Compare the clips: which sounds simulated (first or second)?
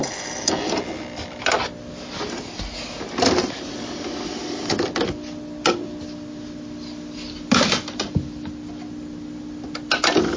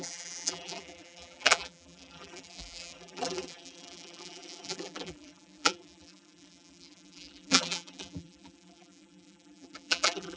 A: second